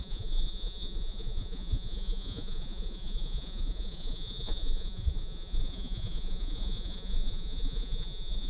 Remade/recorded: remade